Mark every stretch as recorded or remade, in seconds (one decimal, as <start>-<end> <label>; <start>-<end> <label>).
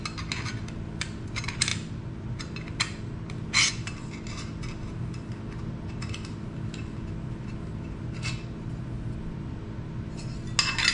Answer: 0.0-10.9 recorded